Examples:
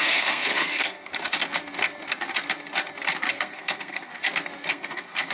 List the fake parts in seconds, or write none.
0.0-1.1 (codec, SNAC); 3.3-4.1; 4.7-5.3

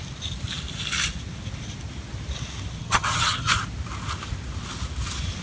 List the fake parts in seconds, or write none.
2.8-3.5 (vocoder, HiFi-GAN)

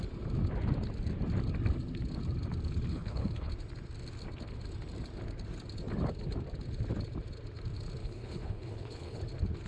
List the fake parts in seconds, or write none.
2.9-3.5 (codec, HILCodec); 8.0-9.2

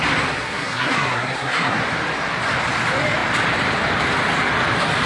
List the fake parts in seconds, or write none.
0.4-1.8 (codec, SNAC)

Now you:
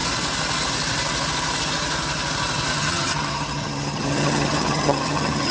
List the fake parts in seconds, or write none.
2.7-5.5 (vocoder, HiFi-GAN)

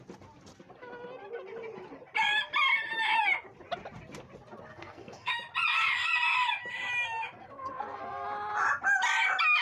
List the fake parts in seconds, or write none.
4.7-5.3 (codec, SNAC); 7.4-8.0